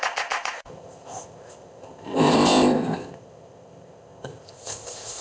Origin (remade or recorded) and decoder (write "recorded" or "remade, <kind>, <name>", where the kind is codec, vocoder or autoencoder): remade, codec, ZipCodec